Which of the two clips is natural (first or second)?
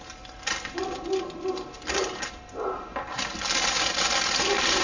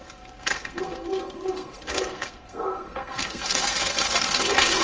first